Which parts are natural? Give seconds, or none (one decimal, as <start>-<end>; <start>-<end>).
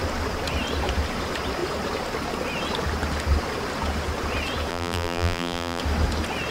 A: 0.0-4.7; 5.8-6.5